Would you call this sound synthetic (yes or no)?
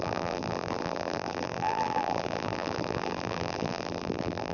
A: yes